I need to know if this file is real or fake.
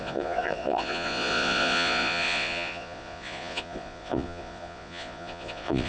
fake